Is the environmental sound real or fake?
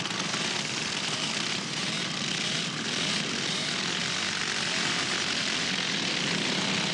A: fake